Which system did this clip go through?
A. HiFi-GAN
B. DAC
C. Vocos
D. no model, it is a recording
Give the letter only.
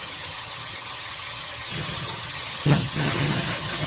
A